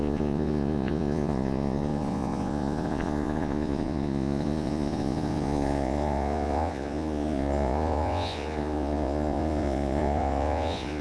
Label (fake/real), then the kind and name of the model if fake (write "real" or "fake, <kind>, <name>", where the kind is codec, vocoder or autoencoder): fake, vocoder, Vocos